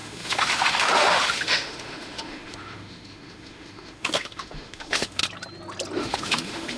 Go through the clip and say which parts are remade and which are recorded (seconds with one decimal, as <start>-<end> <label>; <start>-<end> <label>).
0.0-5.2 remade; 5.2-6.0 recorded; 6.0-6.8 remade